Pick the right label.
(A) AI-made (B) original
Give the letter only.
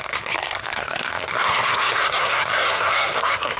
A